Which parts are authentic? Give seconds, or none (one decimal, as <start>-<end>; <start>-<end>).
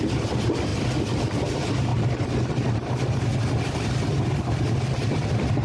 1.9-2.7; 3.3-4.5